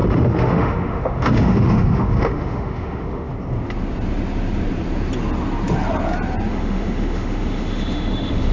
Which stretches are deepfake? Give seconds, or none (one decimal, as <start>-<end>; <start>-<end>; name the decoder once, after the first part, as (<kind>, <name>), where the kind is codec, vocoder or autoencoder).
0.0-3.3 (autoencoder, DAC-VAE); 6.5-8.5